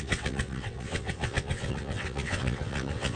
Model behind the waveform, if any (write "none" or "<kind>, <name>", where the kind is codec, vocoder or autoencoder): vocoder, WaveNeXt